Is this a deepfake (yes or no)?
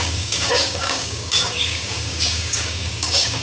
yes